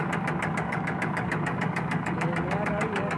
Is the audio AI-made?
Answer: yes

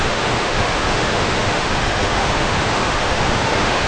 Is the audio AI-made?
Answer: yes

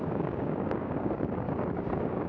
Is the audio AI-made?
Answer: yes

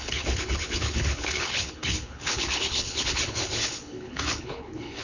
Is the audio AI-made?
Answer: yes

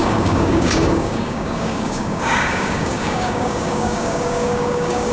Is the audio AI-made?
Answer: yes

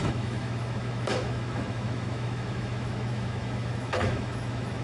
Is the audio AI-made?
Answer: yes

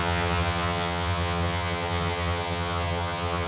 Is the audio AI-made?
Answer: yes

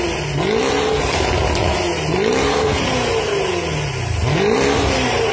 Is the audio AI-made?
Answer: no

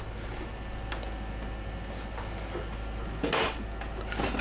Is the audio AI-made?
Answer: no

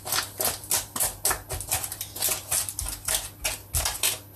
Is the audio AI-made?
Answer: no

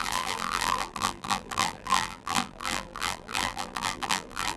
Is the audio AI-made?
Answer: yes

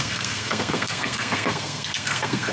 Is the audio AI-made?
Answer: yes